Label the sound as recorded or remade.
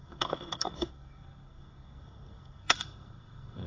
remade